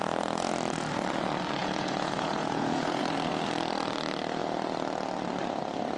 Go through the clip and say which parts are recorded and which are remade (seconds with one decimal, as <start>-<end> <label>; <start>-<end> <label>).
0.0-1.6 recorded; 1.6-3.0 remade; 3.0-6.0 recorded